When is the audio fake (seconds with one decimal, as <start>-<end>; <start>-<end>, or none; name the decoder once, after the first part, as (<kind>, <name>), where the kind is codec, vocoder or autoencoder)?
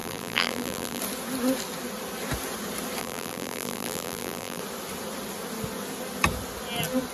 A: 0.0-1.0 (vocoder, BigVGAN v2); 3.0-4.6